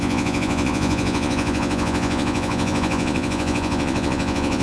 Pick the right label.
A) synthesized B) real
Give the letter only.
A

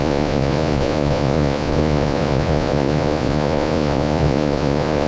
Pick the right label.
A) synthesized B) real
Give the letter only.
A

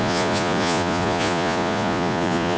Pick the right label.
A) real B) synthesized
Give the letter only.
B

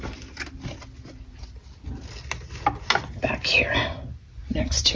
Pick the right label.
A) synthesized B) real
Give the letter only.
B